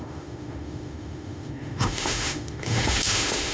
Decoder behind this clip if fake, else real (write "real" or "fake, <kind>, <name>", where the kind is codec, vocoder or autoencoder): fake, autoencoder, DAC-VAE